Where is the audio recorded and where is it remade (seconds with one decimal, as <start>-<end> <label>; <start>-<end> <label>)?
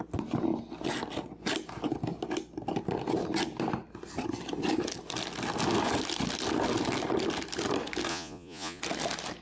0.0-8.1 recorded; 8.1-8.8 remade; 8.8-9.4 recorded